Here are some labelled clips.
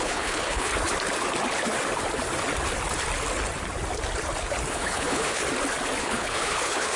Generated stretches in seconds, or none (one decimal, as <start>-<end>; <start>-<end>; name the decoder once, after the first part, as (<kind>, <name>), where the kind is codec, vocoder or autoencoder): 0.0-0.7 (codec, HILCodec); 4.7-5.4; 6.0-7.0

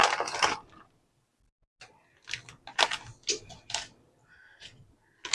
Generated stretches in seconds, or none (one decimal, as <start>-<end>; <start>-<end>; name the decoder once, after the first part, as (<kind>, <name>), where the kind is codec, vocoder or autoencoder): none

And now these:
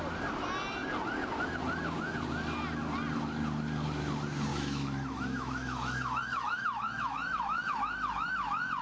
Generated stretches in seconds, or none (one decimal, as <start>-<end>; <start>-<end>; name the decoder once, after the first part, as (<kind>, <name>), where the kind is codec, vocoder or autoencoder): 4.5-8.8 (autoencoder, DAC-VAE)